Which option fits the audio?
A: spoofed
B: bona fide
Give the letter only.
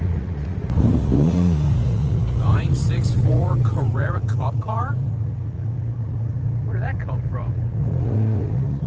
A